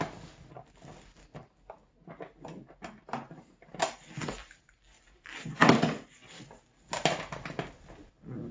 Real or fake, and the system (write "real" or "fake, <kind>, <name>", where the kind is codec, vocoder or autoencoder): real